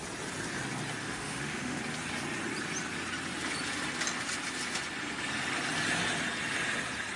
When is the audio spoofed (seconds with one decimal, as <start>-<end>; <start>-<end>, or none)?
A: 1.0-1.8